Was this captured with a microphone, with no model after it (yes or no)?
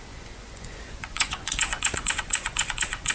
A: no